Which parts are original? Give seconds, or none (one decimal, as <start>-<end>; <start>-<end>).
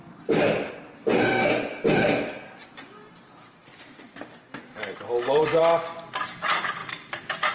0.7-1.1; 5.6-6.8